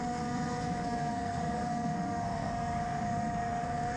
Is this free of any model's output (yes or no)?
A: no